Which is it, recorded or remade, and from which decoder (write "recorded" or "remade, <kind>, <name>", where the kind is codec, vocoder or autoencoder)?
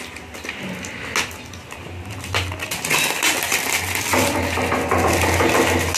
recorded